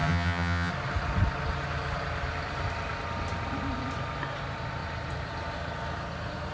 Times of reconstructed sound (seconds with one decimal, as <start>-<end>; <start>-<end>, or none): 0.0-0.7